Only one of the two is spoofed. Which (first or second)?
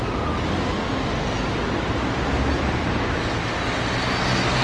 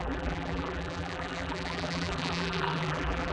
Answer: second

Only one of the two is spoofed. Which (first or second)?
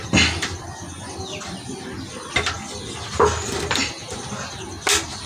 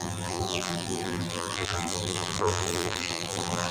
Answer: second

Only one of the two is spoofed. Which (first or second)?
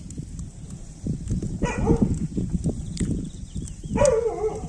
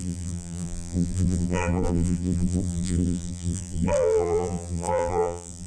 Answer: second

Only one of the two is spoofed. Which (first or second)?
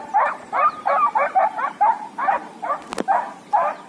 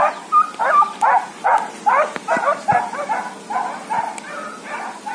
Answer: first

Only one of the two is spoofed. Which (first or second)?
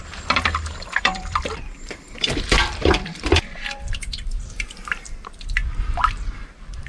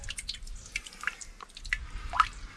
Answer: first